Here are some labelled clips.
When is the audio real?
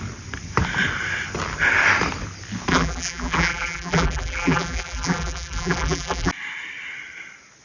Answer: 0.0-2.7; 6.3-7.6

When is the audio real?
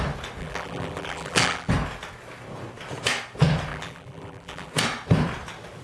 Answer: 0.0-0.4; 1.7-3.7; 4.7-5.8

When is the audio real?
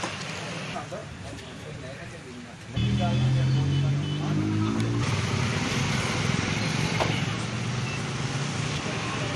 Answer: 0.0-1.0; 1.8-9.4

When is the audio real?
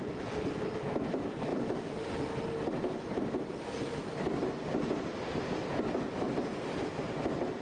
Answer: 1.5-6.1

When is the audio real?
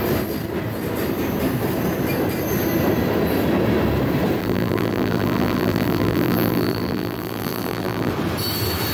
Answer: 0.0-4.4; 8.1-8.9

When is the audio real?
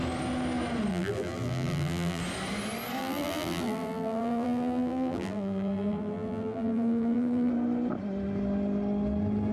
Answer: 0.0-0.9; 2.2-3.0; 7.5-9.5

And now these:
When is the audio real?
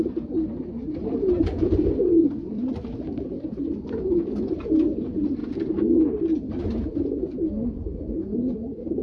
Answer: none